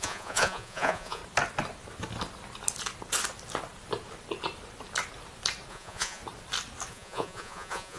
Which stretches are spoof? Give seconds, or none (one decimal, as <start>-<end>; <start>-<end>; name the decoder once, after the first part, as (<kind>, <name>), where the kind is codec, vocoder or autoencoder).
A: 0.0-1.2 (vocoder, Vocos); 5.7-6.2; 6.9-8.0